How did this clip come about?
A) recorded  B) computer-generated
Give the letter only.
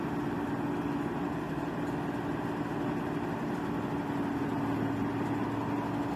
A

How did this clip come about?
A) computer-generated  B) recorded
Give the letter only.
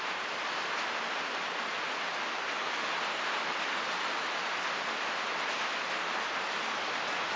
B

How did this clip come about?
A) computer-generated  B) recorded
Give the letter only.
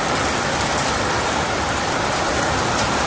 A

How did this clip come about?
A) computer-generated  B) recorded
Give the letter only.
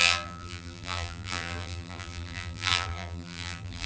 A